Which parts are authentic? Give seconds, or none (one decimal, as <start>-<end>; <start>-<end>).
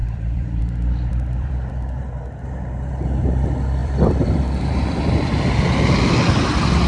0.6-1.1; 1.7-3.8; 5.3-6.9